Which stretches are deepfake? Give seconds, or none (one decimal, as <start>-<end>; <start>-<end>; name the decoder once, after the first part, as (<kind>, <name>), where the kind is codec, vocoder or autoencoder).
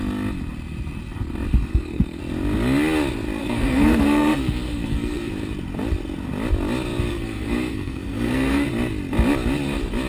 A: 1.7-2.2 (codec, SNAC); 3.4-5.3; 7.1-8.7